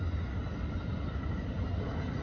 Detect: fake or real real